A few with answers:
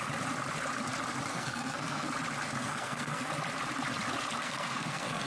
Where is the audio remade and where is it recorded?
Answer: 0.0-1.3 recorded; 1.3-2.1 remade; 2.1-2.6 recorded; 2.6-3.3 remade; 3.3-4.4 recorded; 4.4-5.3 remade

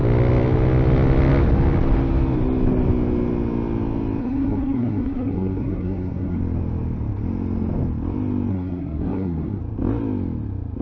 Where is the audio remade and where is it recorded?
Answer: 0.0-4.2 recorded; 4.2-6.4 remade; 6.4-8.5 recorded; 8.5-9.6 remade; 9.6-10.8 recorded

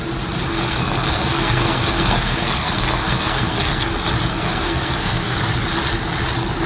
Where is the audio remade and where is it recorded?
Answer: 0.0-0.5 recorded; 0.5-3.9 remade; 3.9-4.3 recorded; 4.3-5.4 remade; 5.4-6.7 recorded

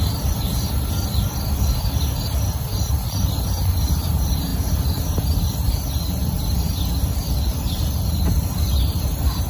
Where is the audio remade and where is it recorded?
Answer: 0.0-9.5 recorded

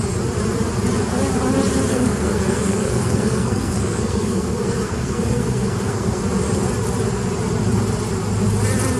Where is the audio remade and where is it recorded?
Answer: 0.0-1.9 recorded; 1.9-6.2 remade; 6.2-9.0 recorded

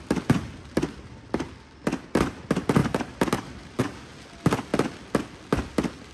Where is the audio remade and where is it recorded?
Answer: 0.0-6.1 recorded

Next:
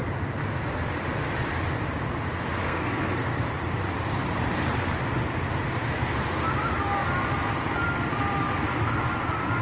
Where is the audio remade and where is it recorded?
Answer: 0.0-2.6 recorded; 2.6-3.4 remade; 3.4-9.6 recorded